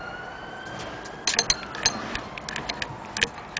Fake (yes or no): no